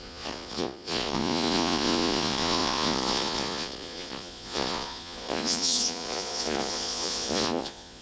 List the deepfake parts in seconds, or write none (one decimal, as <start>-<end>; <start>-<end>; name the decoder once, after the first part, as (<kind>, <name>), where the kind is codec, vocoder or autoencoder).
0.0-8.0 (vocoder, Vocos)